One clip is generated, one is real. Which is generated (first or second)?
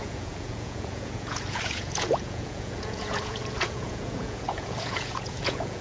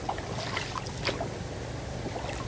first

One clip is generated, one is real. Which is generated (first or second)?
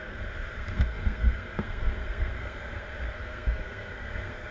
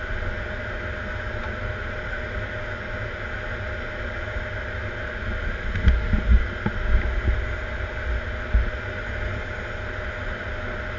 first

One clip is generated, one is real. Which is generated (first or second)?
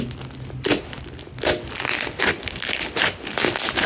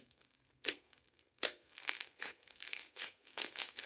second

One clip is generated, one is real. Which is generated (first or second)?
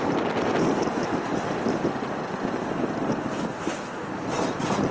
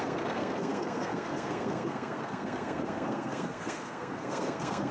second